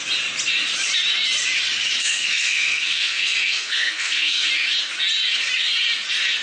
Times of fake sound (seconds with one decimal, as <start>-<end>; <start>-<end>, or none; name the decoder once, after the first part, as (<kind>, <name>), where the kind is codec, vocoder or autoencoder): 2.0-4.5 (codec, SNAC)